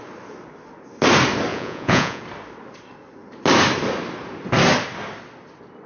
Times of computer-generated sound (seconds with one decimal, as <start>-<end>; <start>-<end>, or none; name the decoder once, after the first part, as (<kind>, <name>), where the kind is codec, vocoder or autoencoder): 1.5-2.2 (vocoder, Vocos)